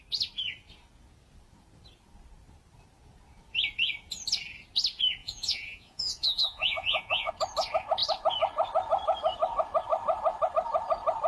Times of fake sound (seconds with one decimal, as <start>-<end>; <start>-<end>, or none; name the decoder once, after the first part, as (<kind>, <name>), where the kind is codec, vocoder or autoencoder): 5.2-7.3 (vocoder, Vocos)